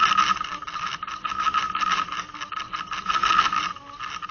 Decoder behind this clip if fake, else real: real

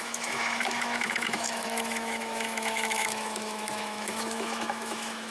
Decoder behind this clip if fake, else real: fake, autoencoder, DAC-VAE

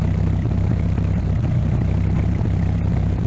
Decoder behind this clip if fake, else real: fake, vocoder, BigVGAN v2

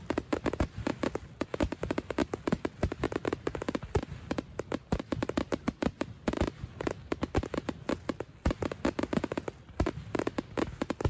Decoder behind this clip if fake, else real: real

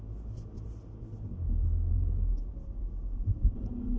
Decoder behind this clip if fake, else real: real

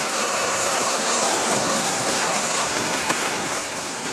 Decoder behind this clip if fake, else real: fake, codec, SNAC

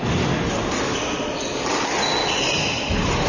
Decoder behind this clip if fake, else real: real